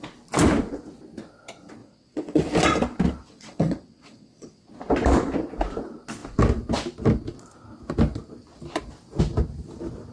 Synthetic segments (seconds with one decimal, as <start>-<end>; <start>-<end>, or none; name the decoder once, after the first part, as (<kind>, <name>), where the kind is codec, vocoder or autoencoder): 1.8-2.4 (vocoder, WaveNeXt); 3.2-4.7